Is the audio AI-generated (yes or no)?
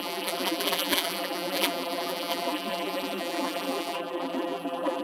yes